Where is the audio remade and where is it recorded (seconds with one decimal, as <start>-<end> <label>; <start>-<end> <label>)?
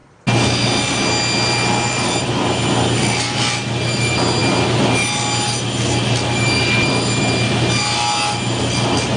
0.0-9.2 recorded